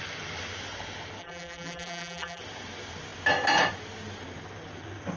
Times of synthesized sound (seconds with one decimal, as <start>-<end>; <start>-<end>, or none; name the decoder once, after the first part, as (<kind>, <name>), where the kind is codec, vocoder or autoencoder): 1.2-2.4 (vocoder, BigVGAN v2)